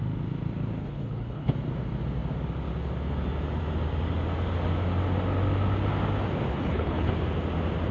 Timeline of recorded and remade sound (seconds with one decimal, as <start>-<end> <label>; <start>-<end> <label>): 0.0-0.8 recorded; 0.8-1.5 remade; 1.5-6.5 recorded; 6.5-7.1 remade; 7.1-7.9 recorded